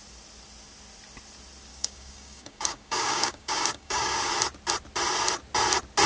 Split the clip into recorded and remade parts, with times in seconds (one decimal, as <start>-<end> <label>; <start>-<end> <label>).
0.0-1.7 recorded; 1.7-4.3 remade; 4.3-6.1 recorded